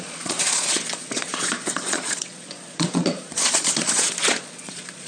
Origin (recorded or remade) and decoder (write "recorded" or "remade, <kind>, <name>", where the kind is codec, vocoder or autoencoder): remade, vocoder, Vocos